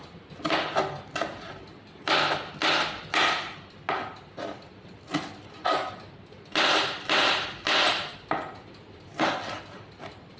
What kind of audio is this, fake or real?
real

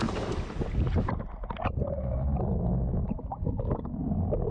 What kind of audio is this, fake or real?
real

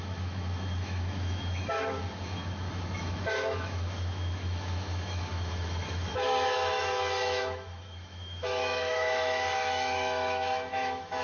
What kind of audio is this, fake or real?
fake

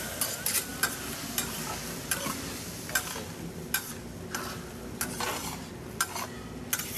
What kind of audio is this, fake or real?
real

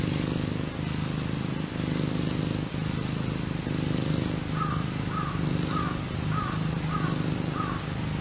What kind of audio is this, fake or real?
real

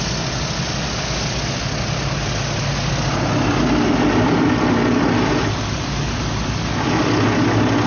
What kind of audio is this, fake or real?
real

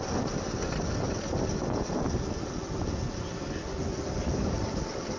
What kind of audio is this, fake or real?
real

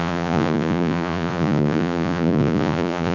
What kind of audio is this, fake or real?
fake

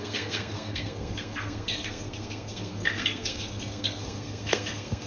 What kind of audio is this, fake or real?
fake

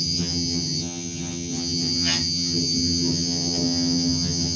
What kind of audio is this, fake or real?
fake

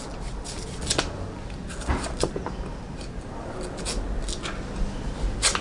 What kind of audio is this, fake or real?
real